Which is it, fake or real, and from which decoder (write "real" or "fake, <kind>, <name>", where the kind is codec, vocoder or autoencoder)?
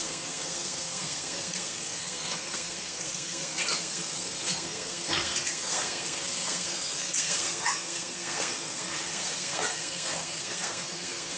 fake, codec, SNAC